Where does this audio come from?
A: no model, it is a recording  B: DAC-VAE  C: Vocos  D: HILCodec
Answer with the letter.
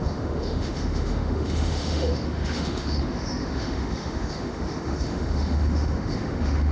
B